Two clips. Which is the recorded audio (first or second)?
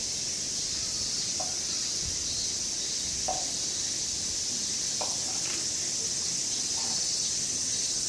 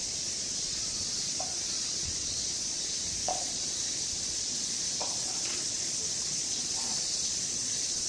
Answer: first